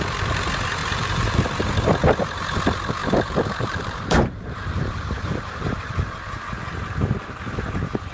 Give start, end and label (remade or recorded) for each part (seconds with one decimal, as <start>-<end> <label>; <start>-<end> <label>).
0.0-0.8 recorded; 0.8-1.7 remade; 1.7-3.0 recorded; 3.0-5.8 remade; 5.8-8.1 recorded